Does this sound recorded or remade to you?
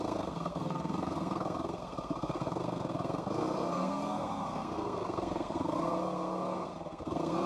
remade